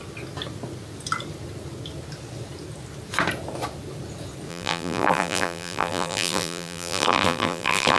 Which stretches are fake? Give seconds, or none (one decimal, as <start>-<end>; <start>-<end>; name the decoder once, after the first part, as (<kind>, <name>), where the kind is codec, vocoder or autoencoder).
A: 4.5-8.0 (vocoder, BigVGAN v2)